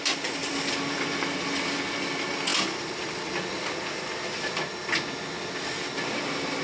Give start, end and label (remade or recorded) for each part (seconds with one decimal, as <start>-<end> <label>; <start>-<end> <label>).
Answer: 0.0-6.6 recorded